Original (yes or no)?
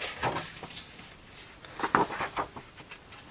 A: yes